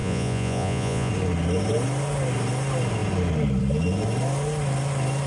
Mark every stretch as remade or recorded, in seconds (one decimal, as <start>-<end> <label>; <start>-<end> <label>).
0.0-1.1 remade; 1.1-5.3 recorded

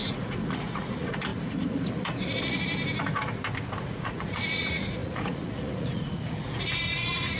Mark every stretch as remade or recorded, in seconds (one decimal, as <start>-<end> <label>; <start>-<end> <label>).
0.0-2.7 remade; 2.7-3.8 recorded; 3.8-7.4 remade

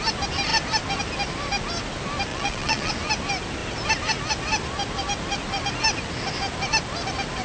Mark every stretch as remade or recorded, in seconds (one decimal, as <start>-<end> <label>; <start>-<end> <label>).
0.0-2.3 recorded; 2.3-2.9 remade; 2.9-7.4 recorded

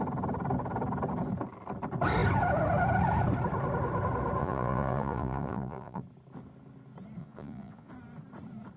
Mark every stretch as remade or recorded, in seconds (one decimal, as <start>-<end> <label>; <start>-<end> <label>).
0.0-4.4 recorded; 4.4-6.0 remade; 6.0-7.2 recorded; 7.2-7.9 remade; 7.9-8.8 recorded

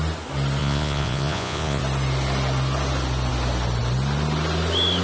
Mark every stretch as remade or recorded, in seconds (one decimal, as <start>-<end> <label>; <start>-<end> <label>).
0.0-0.6 recorded; 0.6-1.8 remade; 1.8-5.0 recorded

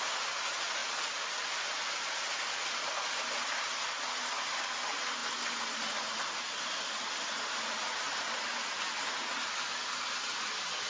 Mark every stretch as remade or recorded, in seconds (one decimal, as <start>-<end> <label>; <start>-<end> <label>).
0.0-10.9 recorded

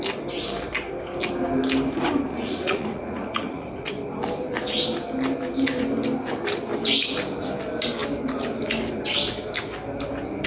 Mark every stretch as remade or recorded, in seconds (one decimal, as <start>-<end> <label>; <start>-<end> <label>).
0.0-2.3 recorded; 2.3-3.9 remade; 3.9-10.5 recorded

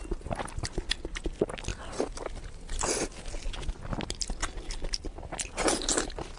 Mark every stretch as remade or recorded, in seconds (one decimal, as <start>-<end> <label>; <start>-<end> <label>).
0.0-6.4 recorded